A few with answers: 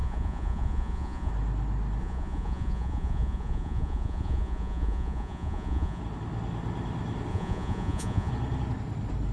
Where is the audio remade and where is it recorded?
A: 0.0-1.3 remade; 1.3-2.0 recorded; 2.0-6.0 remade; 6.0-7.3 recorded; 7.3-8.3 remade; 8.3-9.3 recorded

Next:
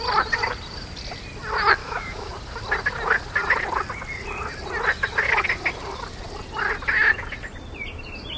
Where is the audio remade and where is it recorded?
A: 0.0-1.8 recorded; 1.8-2.3 remade; 2.3-8.4 recorded

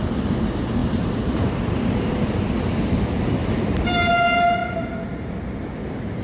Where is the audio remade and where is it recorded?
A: 0.0-0.8 recorded; 0.8-2.9 remade; 2.9-3.4 recorded; 3.4-4.1 remade; 4.1-6.2 recorded

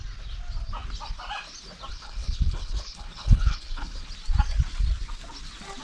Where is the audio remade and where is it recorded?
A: 0.0-1.9 recorded; 1.9-4.1 remade; 4.1-5.8 recorded

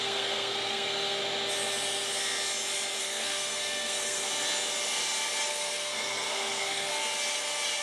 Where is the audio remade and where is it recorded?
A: 0.0-1.2 remade; 1.2-3.0 recorded; 3.0-4.2 remade; 4.2-5.5 recorded; 5.5-6.9 remade; 6.9-7.8 recorded

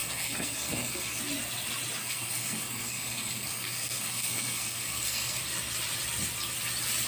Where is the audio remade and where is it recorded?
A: 0.0-1.2 remade; 1.2-2.0 recorded; 2.0-5.4 remade; 5.4-7.1 recorded

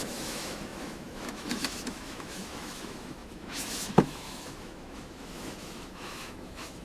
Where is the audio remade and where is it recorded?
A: 0.0-6.8 remade

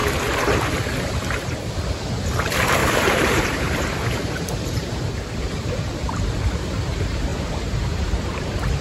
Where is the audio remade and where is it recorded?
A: 0.0-2.8 recorded; 2.8-6.0 remade; 6.0-7.3 recorded; 7.3-8.8 remade